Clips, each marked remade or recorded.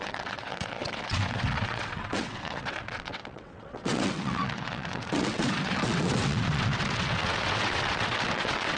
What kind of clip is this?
remade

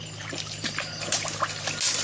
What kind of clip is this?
recorded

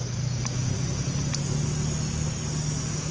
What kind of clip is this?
recorded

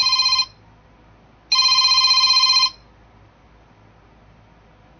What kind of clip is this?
recorded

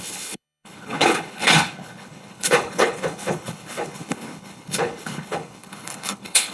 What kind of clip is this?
remade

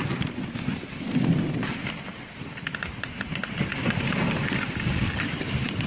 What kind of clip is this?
recorded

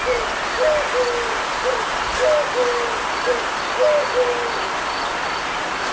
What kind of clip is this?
recorded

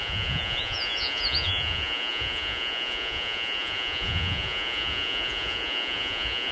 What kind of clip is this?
remade